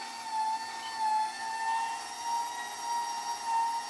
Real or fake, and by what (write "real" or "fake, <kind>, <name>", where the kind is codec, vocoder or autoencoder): real